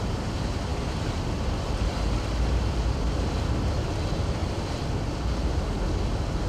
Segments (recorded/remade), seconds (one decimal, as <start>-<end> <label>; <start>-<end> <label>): 0.0-6.5 recorded